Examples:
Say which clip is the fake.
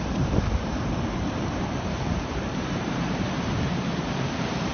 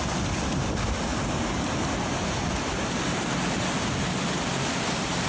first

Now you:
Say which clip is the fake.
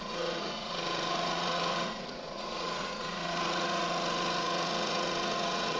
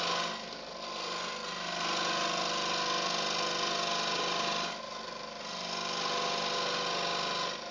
first